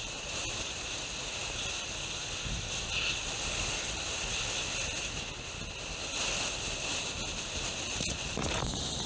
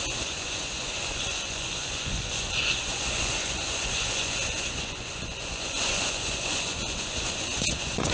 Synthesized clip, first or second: second